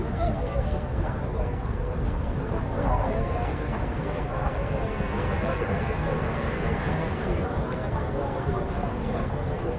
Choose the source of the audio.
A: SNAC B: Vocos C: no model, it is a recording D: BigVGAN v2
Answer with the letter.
A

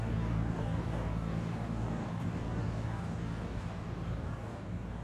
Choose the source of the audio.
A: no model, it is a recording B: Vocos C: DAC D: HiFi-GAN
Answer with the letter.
C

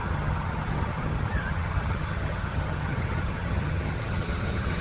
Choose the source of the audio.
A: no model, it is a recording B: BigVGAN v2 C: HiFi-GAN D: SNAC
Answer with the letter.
C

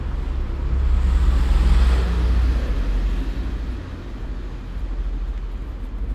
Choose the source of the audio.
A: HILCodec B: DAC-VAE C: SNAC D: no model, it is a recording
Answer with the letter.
D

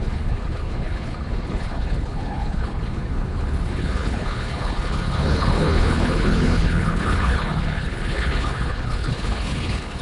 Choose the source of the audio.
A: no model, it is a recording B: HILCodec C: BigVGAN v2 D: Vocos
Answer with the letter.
B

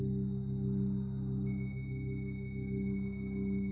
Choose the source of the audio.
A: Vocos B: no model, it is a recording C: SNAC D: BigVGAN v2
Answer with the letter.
B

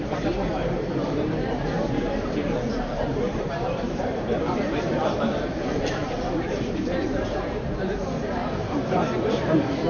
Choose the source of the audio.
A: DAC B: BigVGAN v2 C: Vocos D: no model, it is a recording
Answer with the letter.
B